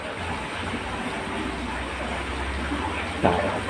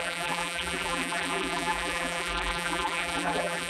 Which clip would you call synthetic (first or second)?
second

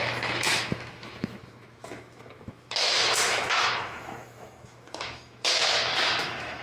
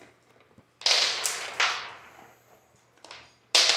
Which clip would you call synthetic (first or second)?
first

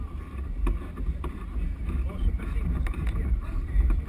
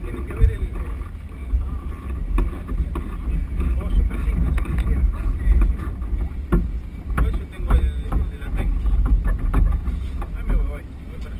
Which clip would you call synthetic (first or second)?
first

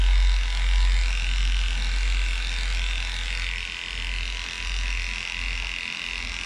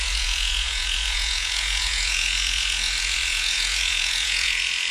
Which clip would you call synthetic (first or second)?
second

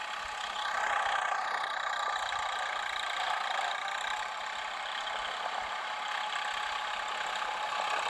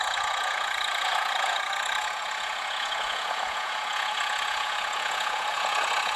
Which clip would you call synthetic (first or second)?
second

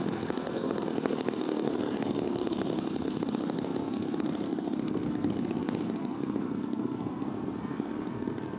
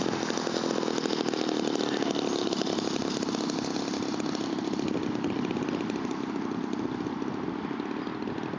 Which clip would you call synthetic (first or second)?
first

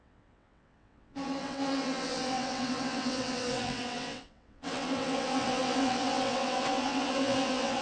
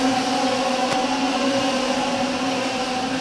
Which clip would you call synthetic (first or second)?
first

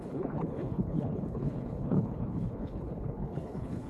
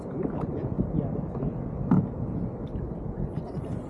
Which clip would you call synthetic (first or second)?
first